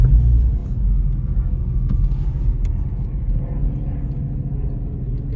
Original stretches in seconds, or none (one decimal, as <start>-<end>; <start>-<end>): 0.0-5.4